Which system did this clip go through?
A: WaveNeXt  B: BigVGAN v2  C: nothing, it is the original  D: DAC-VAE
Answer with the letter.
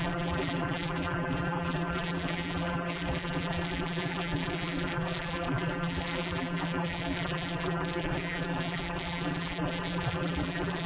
B